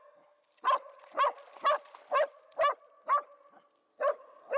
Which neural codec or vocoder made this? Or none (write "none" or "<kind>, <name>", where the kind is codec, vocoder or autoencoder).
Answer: none